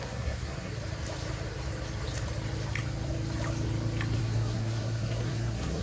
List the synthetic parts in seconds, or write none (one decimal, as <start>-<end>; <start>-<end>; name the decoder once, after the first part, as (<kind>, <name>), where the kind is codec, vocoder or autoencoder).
0.0-0.7 (codec, SNAC); 4.2-5.8